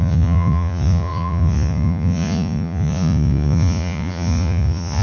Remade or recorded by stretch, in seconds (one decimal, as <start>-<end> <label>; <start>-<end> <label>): 0.0-5.0 remade